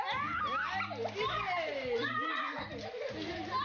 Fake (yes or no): no